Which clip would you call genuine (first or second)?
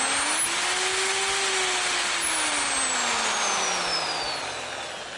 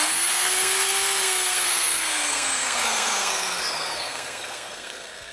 first